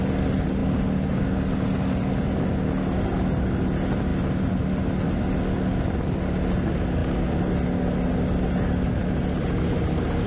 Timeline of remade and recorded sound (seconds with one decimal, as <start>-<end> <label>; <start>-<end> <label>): 0.0-10.3 recorded